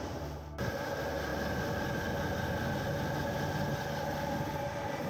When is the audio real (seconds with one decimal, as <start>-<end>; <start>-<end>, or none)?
0.0-5.1